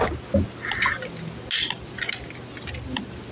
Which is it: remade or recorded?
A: recorded